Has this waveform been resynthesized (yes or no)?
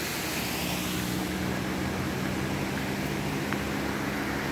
no